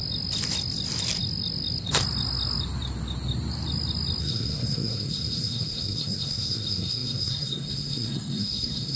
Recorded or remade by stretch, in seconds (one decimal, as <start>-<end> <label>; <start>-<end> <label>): 0.0-4.2 recorded; 4.2-9.0 remade